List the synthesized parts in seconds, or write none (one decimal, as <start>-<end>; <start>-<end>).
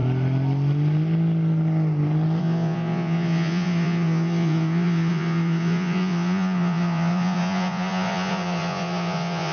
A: 2.4-9.5